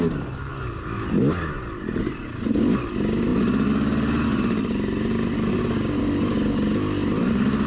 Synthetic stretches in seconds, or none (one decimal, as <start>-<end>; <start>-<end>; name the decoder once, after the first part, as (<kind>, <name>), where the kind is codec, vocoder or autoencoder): none